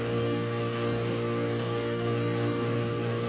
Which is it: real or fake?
fake